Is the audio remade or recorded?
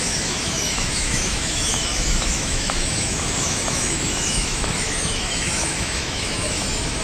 remade